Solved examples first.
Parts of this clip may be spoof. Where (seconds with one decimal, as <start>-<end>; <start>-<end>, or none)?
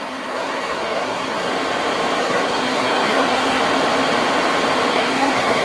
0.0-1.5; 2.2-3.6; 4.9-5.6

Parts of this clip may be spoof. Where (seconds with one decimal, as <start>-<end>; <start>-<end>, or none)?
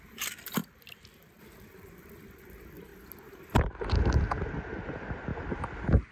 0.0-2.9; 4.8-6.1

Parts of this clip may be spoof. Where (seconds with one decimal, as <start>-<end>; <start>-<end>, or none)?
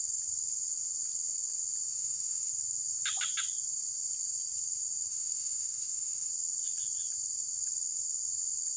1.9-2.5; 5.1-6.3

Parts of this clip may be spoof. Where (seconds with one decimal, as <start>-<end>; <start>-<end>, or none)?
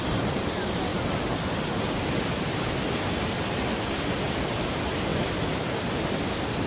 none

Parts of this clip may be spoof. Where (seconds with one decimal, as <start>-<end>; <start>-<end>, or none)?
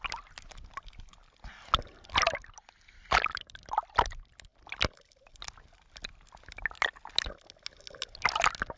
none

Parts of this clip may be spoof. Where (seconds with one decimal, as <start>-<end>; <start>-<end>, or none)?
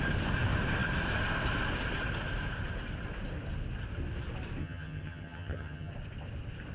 4.6-5.9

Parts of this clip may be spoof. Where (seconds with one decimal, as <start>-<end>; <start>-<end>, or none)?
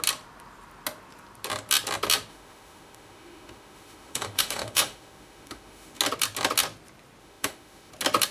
2.3-6.0; 7.2-7.9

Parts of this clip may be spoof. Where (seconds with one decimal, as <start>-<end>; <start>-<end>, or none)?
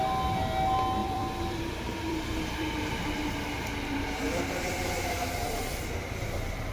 1.0-5.0; 5.4-6.7